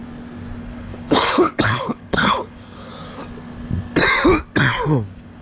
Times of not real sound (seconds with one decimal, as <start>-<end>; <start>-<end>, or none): 0.6-2.9